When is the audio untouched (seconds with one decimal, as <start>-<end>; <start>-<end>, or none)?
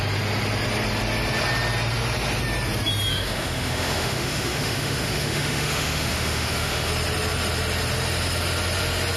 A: 0.0-3.1; 6.9-9.2